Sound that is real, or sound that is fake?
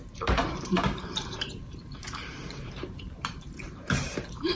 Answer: fake